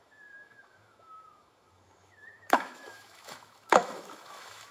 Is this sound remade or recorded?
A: remade